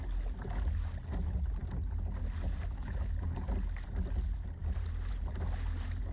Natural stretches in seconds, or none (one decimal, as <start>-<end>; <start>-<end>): 0.0-6.1